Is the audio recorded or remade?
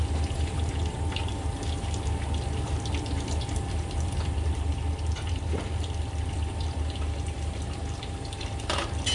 remade